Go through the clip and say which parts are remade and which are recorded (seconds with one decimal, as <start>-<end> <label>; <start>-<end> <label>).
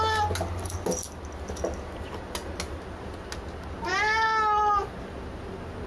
0.0-5.9 recorded